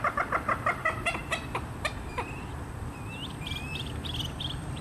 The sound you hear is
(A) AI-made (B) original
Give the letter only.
A